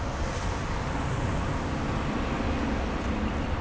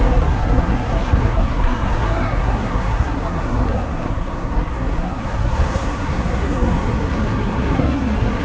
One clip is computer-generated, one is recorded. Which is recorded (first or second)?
first